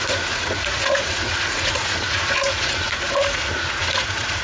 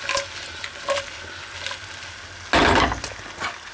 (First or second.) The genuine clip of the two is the second